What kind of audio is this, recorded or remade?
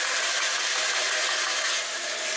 recorded